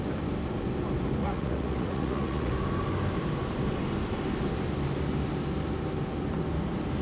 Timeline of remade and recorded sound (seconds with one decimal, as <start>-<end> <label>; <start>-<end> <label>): 0.0-1.2 recorded; 1.2-2.5 remade; 2.5-7.0 recorded